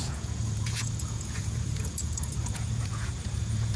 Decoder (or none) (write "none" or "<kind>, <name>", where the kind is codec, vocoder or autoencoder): vocoder, Vocos